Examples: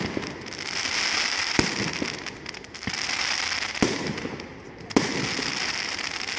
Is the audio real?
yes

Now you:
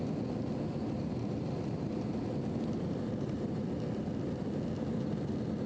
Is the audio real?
yes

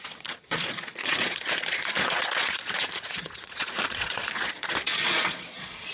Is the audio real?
no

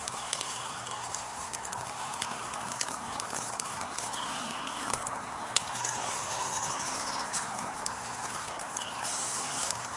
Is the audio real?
no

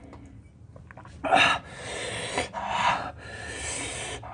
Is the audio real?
yes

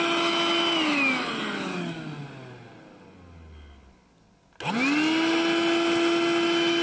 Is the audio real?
yes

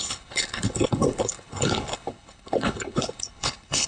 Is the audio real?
no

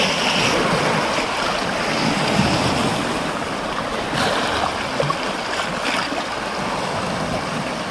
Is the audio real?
yes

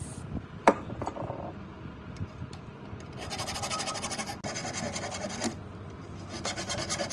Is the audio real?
yes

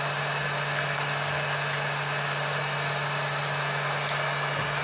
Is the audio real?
yes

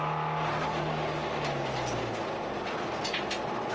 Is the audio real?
yes